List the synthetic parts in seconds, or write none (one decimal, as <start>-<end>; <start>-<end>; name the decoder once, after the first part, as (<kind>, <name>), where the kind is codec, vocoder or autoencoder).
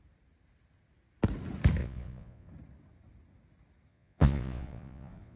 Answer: 1.8-2.5 (vocoder, Vocos); 3.9-5.4